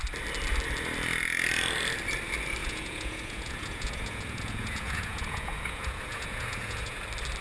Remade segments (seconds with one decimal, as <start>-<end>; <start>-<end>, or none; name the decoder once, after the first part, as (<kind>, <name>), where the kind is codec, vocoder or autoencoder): 2.6-7.0 (vocoder, Vocos)